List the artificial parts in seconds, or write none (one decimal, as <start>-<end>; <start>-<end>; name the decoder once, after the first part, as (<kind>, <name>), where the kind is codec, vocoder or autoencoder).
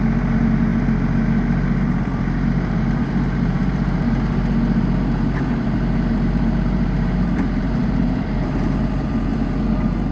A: 0.0-10.1 (vocoder, BigVGAN v2)